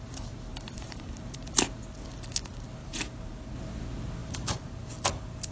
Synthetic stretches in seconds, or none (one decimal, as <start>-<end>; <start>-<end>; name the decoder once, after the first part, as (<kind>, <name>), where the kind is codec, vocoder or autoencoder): 0.5-1.1 (vocoder, BigVGAN v2); 2.8-3.4; 4.2-4.9